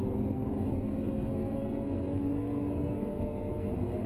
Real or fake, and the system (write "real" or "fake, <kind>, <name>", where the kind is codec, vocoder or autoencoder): fake, codec, SNAC